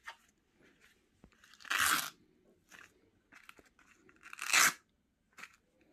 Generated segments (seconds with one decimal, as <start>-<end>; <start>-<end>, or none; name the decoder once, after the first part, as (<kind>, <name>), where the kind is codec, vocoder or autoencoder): none